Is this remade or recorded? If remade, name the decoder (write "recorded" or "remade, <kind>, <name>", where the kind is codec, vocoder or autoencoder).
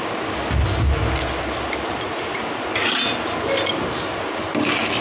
recorded